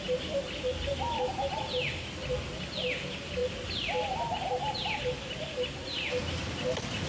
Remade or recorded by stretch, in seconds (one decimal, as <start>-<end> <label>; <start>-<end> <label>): 0.0-7.1 recorded